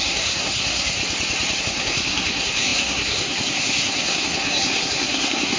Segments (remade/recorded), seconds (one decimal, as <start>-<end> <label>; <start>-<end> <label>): 0.0-1.0 remade; 1.0-1.6 recorded; 1.6-5.6 remade